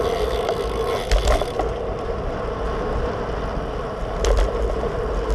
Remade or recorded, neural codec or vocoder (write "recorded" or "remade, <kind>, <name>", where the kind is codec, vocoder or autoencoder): recorded